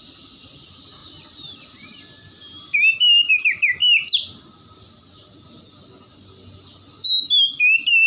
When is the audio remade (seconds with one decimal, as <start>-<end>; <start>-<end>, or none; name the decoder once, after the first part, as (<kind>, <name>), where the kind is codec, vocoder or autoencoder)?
none